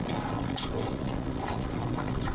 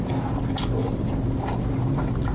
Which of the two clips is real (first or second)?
second